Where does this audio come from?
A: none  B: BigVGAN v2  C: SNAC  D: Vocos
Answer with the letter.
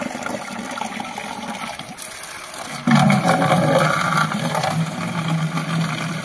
A